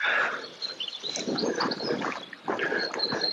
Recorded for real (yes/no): yes